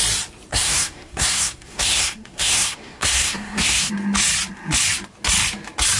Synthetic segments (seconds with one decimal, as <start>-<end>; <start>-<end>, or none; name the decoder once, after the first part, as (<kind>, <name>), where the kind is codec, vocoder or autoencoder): 0.5-3.9 (codec, SNAC)

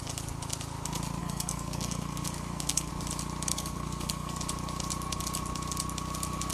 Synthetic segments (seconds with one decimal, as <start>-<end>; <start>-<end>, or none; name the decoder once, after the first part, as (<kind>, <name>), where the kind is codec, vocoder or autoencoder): 1.2-2.9 (codec, SNAC); 3.5-4.4

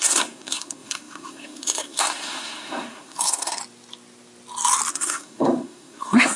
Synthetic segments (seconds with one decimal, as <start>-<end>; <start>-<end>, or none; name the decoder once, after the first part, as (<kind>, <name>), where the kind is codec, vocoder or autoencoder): 0.0-3.6 (codec, SNAC); 4.9-6.4

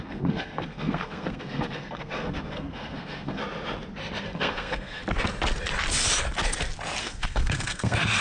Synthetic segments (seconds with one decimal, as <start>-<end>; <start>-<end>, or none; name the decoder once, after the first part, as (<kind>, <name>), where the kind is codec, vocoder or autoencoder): 0.0-3.4 (codec, SNAC); 4.2-5.0; 7.0-8.2

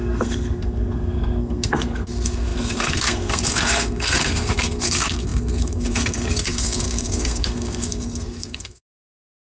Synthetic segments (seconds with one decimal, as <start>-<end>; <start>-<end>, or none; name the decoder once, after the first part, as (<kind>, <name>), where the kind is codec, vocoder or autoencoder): 0.0-9.5 (codec, SNAC)

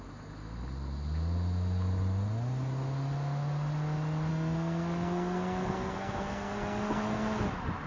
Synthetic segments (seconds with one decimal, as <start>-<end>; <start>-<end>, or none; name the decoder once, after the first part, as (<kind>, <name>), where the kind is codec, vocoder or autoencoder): 4.3-7.4 (codec, SNAC)